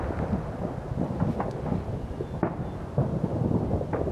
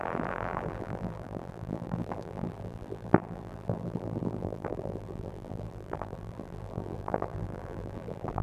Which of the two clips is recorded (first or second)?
first